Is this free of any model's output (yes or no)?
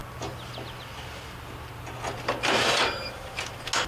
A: yes